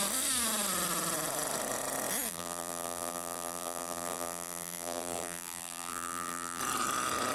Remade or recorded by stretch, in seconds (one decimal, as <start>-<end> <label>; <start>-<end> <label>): 0.0-2.3 recorded; 2.3-6.6 remade; 6.6-7.3 recorded

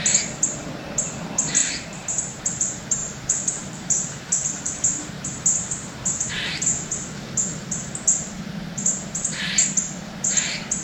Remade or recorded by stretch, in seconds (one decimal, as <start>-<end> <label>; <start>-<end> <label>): 0.0-1.6 recorded; 1.6-2.4 remade; 2.4-3.0 recorded; 3.0-6.3 remade; 6.3-10.8 recorded